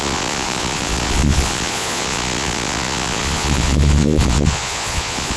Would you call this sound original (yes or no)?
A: no